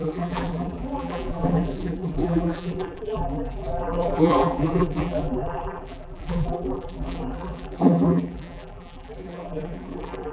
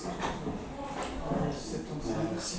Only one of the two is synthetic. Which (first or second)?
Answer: first